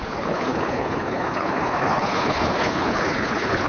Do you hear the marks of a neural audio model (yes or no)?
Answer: yes